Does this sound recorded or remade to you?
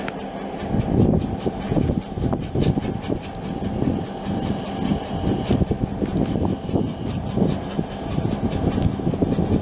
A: recorded